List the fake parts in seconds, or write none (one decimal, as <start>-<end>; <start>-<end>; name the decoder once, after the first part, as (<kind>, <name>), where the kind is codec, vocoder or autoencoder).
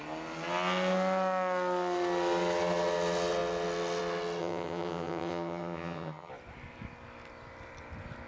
4.4-6.3 (vocoder, HiFi-GAN)